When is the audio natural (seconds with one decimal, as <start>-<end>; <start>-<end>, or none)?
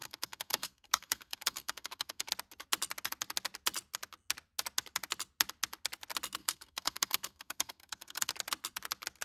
2.3-6.4; 8.3-9.2